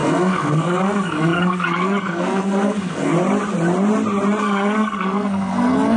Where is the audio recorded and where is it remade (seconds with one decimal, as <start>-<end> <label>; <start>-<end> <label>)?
0.0-3.1 remade; 3.1-4.4 recorded; 4.4-6.0 remade

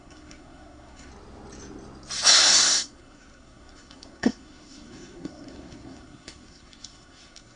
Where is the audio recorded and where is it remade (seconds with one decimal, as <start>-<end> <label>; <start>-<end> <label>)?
0.0-1.1 remade; 1.1-2.3 recorded; 2.3-7.6 remade

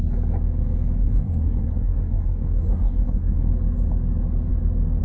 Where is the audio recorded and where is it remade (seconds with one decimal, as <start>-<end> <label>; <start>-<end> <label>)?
0.0-1.0 recorded; 1.0-3.5 remade; 3.5-5.0 recorded

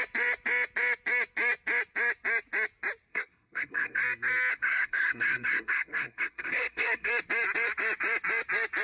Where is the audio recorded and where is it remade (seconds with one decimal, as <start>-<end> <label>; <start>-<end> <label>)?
0.0-3.1 recorded; 3.1-4.0 remade; 4.0-4.5 recorded; 4.5-7.1 remade; 7.1-8.8 recorded

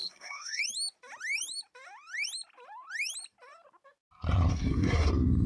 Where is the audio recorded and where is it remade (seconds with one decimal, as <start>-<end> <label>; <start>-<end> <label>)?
0.0-0.6 remade; 0.6-4.5 recorded; 4.5-5.1 remade; 5.1-5.5 recorded